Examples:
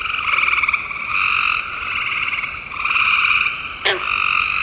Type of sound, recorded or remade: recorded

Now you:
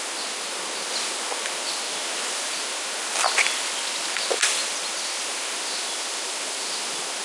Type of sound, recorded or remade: recorded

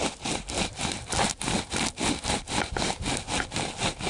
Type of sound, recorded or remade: recorded